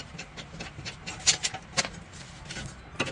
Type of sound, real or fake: real